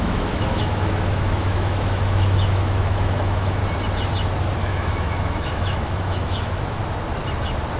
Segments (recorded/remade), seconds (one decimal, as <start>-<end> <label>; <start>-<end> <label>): 0.0-3.6 remade; 3.6-4.6 recorded; 4.6-6.8 remade; 6.8-7.8 recorded